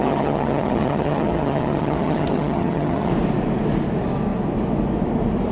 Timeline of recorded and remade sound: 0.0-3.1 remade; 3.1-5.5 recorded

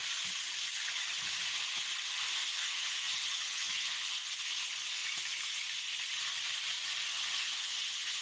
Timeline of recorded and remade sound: 0.0-2.6 recorded; 2.6-4.3 remade; 4.3-7.1 recorded; 7.1-8.2 remade